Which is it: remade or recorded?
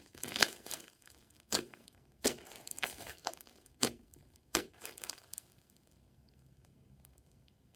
remade